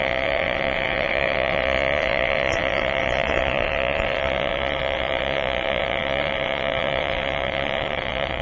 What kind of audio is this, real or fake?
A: fake